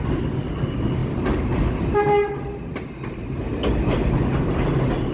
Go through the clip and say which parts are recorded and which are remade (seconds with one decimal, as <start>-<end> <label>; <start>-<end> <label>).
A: 0.0-5.1 recorded